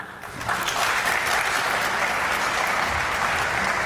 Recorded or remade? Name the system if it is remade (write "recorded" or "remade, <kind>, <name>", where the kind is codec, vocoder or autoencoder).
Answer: recorded